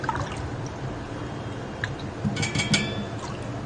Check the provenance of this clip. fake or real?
real